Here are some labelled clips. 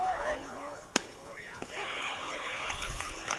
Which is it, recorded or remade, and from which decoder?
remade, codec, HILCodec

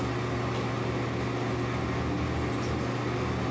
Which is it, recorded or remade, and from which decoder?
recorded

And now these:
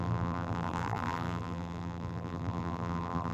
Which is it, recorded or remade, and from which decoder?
remade, vocoder, BigVGAN v2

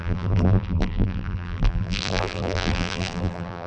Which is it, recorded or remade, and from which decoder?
remade, vocoder, BigVGAN v2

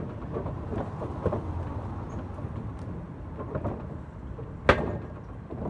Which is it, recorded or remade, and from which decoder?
recorded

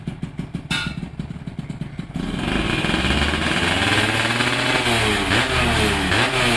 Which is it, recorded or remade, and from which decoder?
recorded